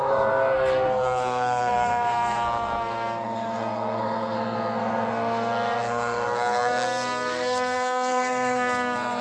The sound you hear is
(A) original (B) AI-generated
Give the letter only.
B